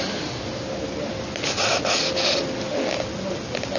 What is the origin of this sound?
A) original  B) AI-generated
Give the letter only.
A